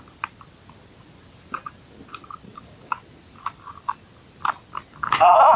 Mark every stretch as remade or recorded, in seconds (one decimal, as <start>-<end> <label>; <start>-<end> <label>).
0.0-5.6 recorded